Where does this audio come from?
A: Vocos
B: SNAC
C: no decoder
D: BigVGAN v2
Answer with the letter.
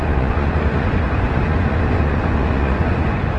A